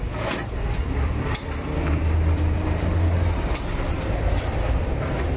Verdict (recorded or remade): remade